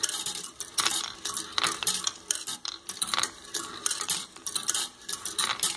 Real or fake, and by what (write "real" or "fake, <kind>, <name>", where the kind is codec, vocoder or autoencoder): fake, vocoder, BigVGAN v2